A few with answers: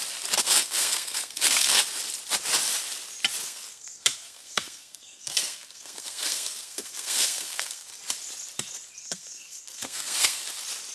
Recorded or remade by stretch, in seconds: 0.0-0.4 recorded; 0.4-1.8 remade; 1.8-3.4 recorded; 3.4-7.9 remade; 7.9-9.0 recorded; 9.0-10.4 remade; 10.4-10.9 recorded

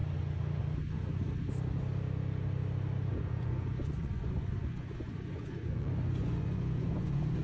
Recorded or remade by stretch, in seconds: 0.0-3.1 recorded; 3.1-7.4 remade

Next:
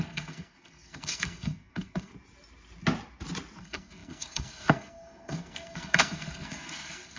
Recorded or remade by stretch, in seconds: 0.0-2.1 remade; 2.1-3.6 recorded; 3.6-7.2 remade